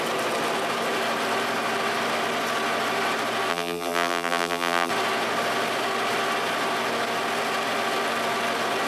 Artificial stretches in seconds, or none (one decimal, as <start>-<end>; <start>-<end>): 3.5-4.9